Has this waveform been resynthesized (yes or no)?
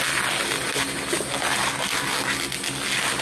no